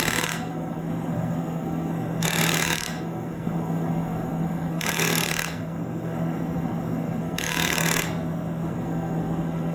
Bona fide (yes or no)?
no